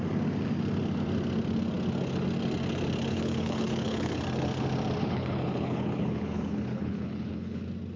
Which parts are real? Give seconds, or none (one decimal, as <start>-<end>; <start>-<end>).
0.0-3.1; 4.2-5.0; 7.6-8.0